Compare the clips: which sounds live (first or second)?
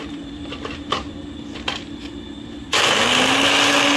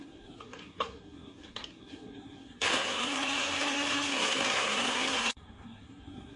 first